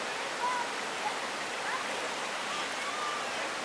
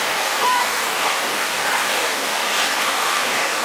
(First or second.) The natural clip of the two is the first